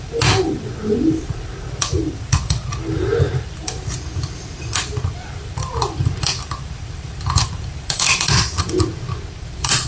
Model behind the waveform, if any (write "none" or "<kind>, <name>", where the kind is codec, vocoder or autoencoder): vocoder, BigVGAN v2